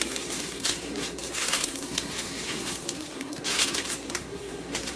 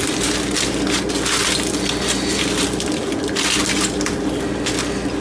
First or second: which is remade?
first